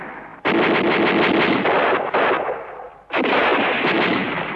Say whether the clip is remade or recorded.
recorded